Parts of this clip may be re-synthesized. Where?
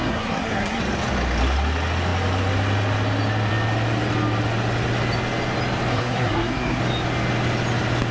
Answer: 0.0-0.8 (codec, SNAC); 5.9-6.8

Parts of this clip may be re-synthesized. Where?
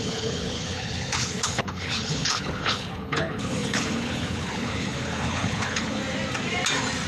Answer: 0.0-6.0 (codec, HILCodec)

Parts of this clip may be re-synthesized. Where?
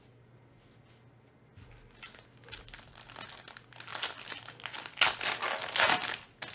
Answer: none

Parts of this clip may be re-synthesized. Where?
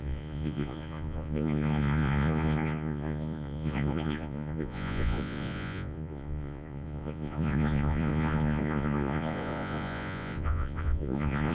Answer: 0.0-11.5 (vocoder, Vocos)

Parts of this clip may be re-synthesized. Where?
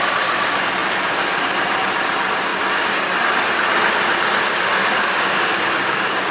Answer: 4.8-6.3 (codec, DAC)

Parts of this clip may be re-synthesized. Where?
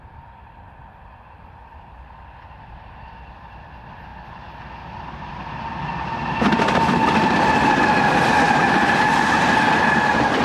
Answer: none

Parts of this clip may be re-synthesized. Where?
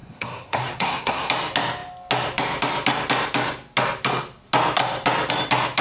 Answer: 0.0-1.3 (codec, SNAC)